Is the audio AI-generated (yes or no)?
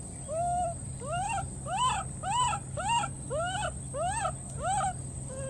no